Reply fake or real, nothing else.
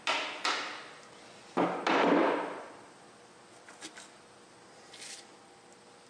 real